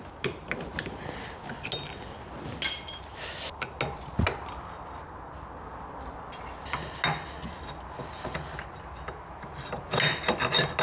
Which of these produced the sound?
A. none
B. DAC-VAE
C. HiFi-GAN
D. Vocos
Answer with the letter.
A